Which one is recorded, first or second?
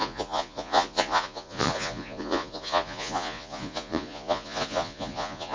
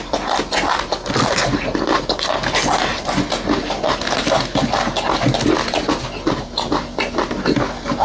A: second